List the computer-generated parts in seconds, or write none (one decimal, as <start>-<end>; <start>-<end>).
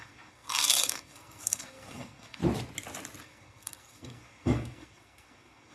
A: 0.0-2.4; 3.2-5.7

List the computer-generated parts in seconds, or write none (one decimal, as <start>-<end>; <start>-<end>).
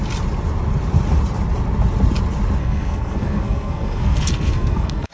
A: 2.6-5.1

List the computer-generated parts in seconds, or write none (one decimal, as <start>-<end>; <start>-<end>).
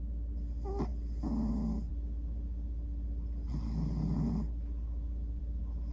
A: none